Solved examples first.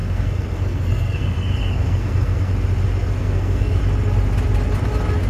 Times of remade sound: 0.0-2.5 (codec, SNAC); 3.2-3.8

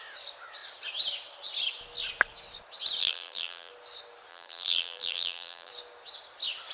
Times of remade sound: 3.0-3.7 (vocoder, BigVGAN v2); 4.3-5.7

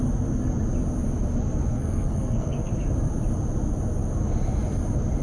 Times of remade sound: 1.7-2.7 (codec, SNAC)

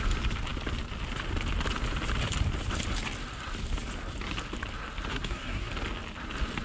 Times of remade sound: 5.1-5.7 (codec, SNAC)